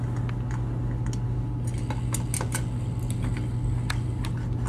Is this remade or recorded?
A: recorded